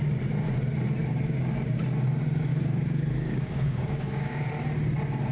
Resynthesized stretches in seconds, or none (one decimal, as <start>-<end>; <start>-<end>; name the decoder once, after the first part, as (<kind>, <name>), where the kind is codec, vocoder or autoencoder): 1.1-1.7 (codec, DAC); 2.5-4.5